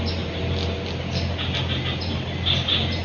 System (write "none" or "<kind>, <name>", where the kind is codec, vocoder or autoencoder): none